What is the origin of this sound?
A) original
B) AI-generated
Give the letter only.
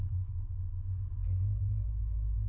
A